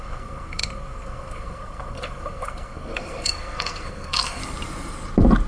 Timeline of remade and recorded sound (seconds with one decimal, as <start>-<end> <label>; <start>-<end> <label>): 0.0-4.4 remade; 4.4-5.5 recorded